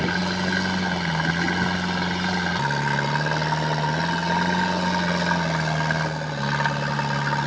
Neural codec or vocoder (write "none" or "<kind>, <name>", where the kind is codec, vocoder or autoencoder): none